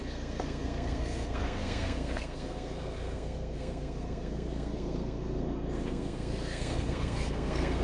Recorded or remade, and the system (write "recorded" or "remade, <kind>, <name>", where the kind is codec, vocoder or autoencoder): remade, codec, SNAC